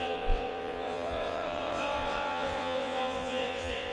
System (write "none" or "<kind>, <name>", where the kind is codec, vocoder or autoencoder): vocoder, WaveNeXt